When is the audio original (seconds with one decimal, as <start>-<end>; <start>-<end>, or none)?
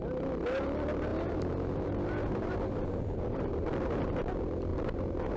0.0-1.1; 4.3-4.7